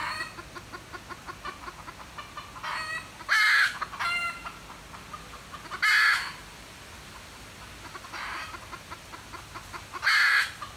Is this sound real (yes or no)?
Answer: yes